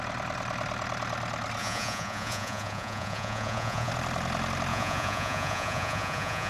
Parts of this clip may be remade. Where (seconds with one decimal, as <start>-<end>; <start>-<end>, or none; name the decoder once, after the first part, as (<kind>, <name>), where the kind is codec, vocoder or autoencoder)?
1.6-3.9 (vocoder, Vocos); 4.7-6.5